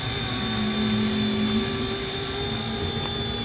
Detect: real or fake real